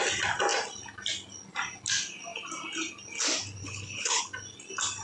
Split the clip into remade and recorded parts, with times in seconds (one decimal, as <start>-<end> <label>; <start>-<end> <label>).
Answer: 0.0-3.6 recorded; 3.6-4.2 remade; 4.2-5.0 recorded